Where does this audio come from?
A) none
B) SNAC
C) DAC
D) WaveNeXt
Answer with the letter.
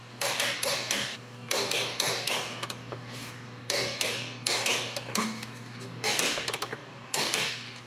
C